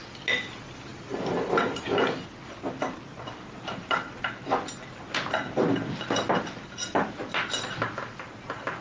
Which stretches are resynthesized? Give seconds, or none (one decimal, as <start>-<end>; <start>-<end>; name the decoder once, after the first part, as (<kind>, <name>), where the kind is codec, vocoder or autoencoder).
none